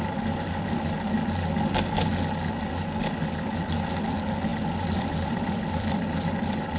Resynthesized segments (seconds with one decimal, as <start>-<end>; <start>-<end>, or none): 4.5-6.8